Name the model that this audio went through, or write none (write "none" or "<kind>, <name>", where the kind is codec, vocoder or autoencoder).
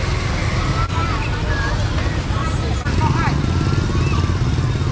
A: none